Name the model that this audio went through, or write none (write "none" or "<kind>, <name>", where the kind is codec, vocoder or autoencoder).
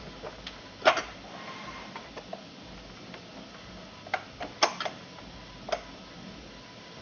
none